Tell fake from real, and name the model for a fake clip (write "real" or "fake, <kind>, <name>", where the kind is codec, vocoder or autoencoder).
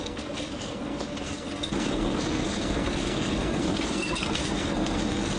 fake, codec, SNAC